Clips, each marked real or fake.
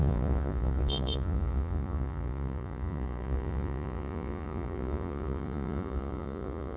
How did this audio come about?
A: fake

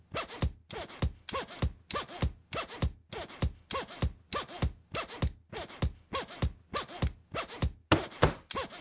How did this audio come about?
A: real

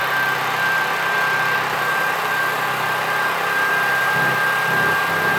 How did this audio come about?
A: real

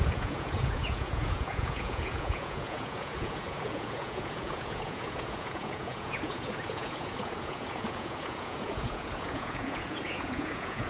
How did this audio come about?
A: fake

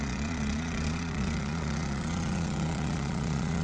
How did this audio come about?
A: fake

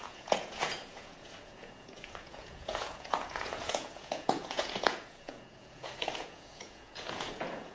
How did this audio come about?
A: fake